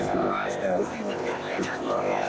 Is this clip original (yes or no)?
no